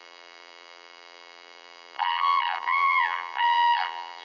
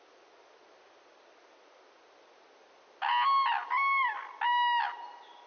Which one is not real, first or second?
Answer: first